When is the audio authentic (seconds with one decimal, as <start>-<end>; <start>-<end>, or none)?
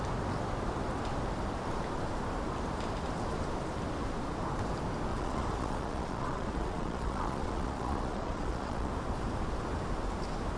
0.0-5.1; 8.9-10.6